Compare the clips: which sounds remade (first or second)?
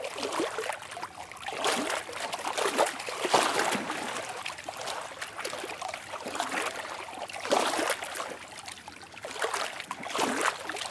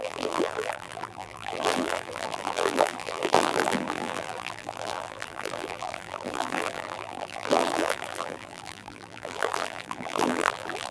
second